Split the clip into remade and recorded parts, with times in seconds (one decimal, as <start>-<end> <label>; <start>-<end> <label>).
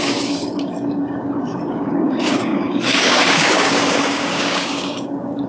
0.0-5.5 remade